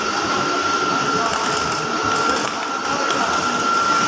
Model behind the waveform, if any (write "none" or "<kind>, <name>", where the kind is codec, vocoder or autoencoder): none